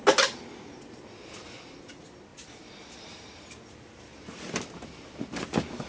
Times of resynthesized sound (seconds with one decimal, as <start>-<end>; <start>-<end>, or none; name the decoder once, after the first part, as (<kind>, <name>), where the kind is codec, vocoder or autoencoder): none